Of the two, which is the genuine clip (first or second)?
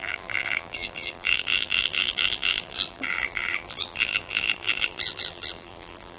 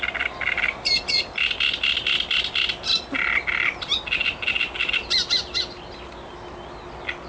second